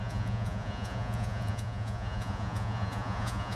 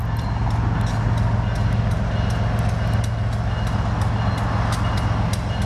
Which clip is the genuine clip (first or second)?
second